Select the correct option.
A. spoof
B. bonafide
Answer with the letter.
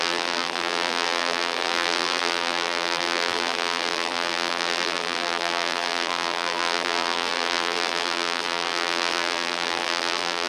A